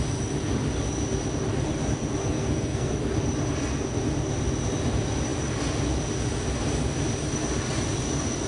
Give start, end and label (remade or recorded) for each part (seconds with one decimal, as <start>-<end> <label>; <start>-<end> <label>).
0.0-2.2 recorded; 2.2-2.9 remade; 2.9-8.5 recorded

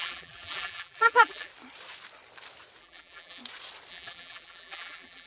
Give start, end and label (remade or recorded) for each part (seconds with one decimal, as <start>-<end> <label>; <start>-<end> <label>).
0.0-1.5 remade; 1.5-2.8 recorded; 2.8-3.4 remade; 3.4-3.9 recorded; 3.9-5.3 remade

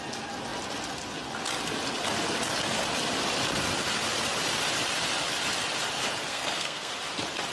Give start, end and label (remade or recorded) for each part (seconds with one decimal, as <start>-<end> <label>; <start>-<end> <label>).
0.0-6.3 recorded; 6.3-6.9 remade; 6.9-7.5 recorded

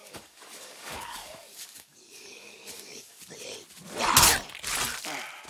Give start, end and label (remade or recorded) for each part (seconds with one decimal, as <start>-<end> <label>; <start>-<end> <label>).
0.0-3.3 remade; 3.3-5.5 recorded

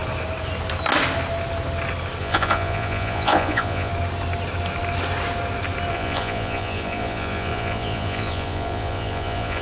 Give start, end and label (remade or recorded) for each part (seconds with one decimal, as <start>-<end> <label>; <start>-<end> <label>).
0.0-2.2 recorded; 2.2-3.9 remade; 3.9-5.9 recorded; 5.9-9.6 remade

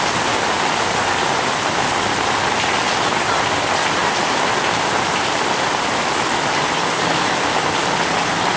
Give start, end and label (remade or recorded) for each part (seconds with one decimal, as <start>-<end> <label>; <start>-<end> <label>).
0.0-8.6 remade

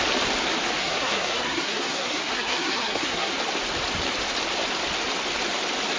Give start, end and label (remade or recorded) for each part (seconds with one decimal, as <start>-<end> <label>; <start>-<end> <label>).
0.0-0.8 recorded; 0.8-3.3 remade; 3.3-6.0 recorded

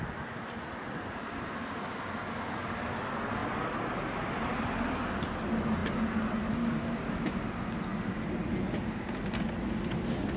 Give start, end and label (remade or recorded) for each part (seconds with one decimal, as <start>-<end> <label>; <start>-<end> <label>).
0.0-10.4 recorded